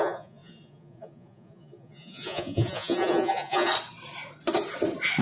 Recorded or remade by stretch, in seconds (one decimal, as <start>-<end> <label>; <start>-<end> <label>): 0.0-3.7 remade; 3.7-5.2 recorded